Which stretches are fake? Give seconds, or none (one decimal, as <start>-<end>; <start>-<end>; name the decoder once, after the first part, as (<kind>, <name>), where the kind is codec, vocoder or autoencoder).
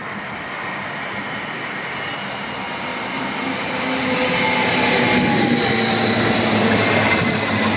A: none